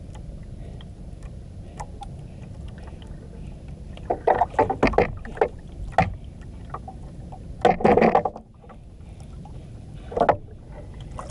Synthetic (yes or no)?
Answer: no